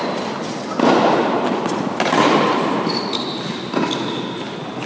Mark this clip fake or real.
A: fake